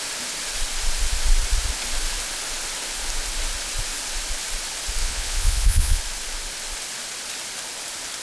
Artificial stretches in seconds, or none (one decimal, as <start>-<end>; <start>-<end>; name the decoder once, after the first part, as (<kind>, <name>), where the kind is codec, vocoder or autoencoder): 5.0-6.0 (vocoder, Vocos)